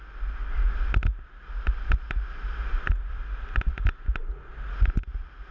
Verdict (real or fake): real